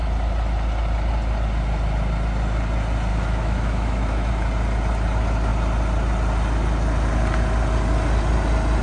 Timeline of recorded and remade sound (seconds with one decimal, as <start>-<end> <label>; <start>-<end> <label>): 0.0-3.1 recorded; 3.1-4.3 remade; 4.3-8.8 recorded